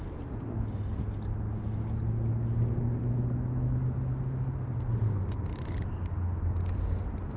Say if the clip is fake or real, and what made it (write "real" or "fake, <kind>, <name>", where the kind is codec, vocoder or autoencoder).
real